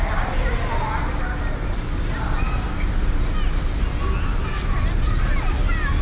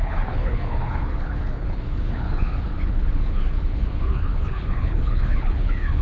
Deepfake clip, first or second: second